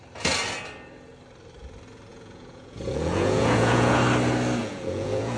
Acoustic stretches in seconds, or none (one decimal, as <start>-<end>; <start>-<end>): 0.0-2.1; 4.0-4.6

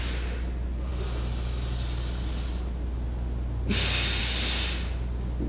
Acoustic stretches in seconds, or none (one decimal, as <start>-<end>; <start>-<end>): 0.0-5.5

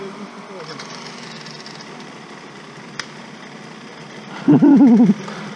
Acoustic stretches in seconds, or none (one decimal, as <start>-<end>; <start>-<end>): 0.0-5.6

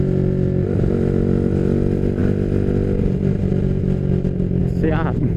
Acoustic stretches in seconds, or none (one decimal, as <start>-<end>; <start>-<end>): 0.0-5.4

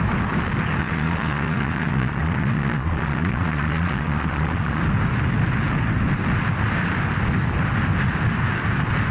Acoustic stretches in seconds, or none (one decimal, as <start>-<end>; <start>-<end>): 0.0-0.8; 4.8-9.1

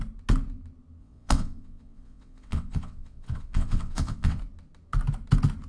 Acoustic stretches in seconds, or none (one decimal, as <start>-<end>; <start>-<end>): 0.0-1.0; 4.4-5.7

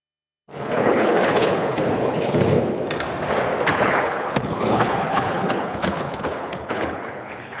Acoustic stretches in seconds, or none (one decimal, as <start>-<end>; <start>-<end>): 2.8-3.7

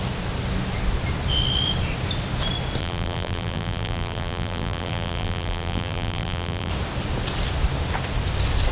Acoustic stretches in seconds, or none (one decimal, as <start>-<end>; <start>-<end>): 0.0-2.8; 6.7-8.7